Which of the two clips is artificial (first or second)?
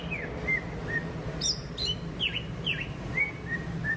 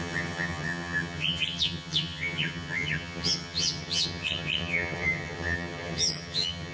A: second